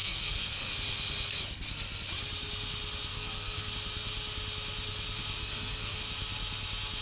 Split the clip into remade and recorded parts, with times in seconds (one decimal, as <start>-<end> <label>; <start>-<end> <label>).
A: 0.0-0.7 remade; 0.7-3.1 recorded; 3.1-3.7 remade; 3.7-5.4 recorded; 5.4-6.0 remade; 6.0-7.0 recorded